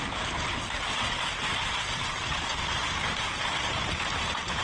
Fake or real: real